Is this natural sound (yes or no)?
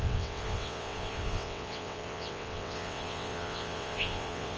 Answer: no